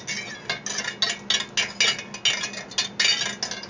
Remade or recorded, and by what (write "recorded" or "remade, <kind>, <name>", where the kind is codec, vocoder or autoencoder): recorded